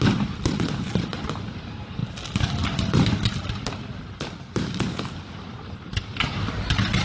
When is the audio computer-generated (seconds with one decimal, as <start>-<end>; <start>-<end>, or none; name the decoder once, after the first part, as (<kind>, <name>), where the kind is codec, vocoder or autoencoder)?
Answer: none